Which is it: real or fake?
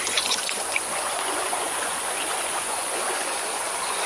fake